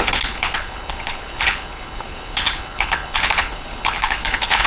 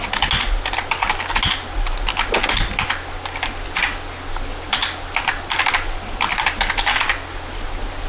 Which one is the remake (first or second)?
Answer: first